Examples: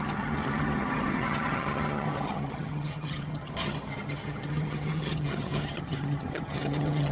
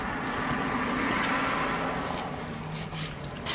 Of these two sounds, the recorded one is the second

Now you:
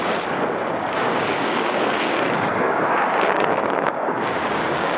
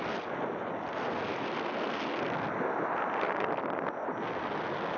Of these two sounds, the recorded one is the second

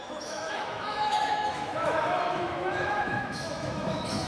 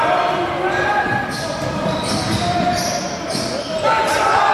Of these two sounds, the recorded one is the second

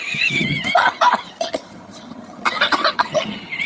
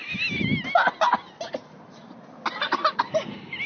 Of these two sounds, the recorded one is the second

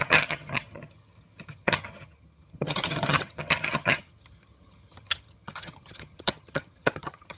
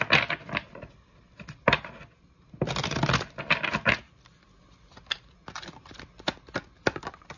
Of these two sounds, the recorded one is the second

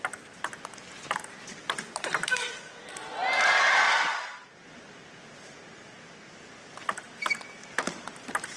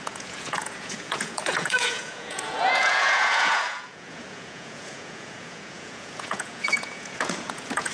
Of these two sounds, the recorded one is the first